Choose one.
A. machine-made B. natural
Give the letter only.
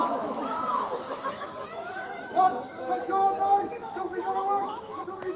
A